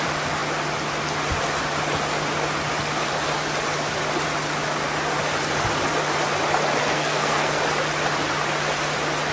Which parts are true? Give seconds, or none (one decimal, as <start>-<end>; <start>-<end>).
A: 0.0-6.8; 7.6-9.3

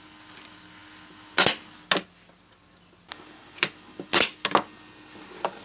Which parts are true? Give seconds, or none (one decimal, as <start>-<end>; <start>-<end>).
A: 0.0-5.6